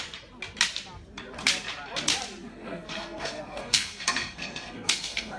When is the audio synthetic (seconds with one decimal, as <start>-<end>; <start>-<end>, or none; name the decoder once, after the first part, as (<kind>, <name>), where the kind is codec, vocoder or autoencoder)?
2.5-5.4 (codec, SNAC)